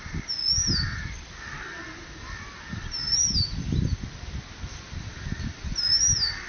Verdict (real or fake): real